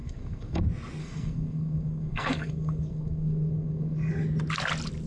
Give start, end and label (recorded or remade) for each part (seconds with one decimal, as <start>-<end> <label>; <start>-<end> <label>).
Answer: 0.0-0.6 remade; 0.6-1.0 recorded; 1.0-4.1 remade; 4.1-5.1 recorded